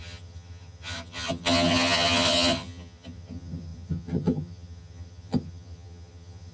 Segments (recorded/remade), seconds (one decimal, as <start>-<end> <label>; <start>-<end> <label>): 0.0-6.5 remade